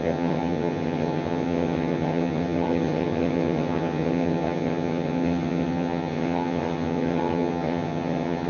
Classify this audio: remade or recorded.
remade